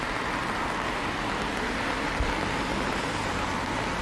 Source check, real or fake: real